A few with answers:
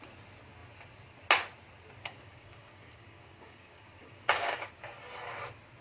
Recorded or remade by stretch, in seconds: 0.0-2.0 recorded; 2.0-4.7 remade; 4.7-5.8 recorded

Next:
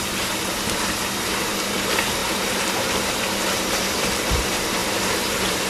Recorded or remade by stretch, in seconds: 0.0-5.7 remade

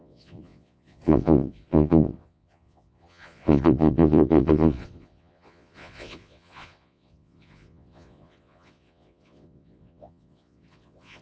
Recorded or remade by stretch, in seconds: 0.0-11.2 remade

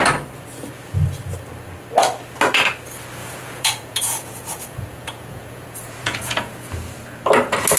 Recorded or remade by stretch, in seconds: 0.0-3.2 recorded; 3.2-6.7 remade; 6.7-7.8 recorded

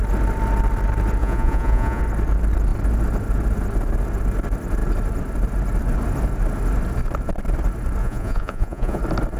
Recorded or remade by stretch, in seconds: 0.0-1.2 recorded; 1.2-2.0 remade; 2.0-8.0 recorded; 8.0-9.0 remade; 9.0-9.4 recorded

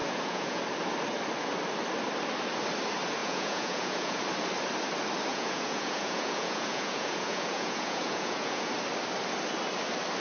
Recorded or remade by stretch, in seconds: 0.0-0.6 remade; 0.6-3.2 recorded; 3.2-4.2 remade; 4.2-5.3 recorded; 5.3-8.7 remade; 8.7-10.2 recorded

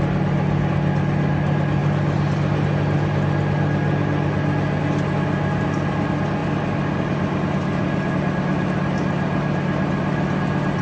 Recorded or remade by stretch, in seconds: 0.0-10.8 recorded

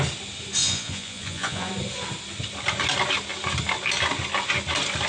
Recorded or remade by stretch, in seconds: 0.0-0.6 recorded; 0.6-1.7 remade; 1.7-5.1 recorded